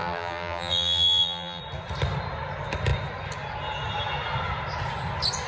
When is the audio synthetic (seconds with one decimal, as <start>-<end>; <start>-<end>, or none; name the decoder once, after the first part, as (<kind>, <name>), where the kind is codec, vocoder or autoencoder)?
0.0-1.6 (vocoder, BigVGAN v2)